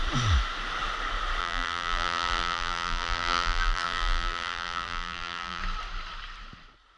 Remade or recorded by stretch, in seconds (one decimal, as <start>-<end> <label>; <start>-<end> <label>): 0.0-1.4 recorded; 1.4-5.6 remade; 5.6-7.0 recorded